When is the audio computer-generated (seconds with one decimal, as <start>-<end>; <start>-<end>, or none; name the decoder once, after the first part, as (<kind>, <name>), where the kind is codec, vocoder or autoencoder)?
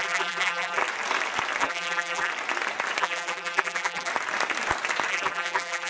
0.0-0.8 (vocoder, BigVGAN v2); 1.6-2.3; 3.0-4.1; 5.1-5.9